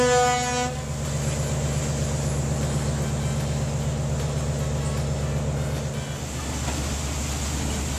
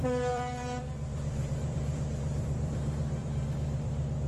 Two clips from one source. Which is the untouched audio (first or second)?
first